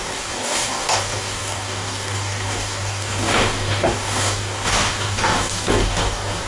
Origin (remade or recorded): remade